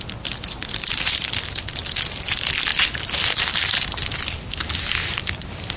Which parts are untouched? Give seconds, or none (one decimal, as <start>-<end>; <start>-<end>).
0.0-5.8